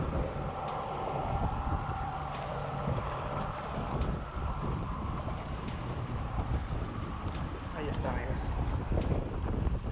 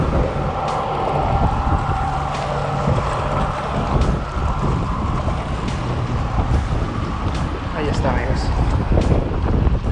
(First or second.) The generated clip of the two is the first